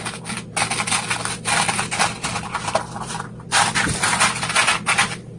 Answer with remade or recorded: recorded